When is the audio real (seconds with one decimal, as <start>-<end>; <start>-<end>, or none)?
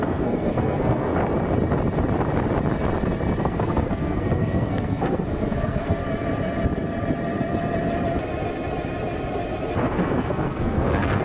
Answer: 1.1-3.4; 6.0-9.8